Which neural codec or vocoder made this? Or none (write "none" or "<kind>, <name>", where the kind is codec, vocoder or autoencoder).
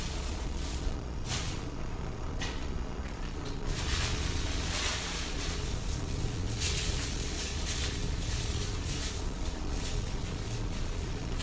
vocoder, Vocos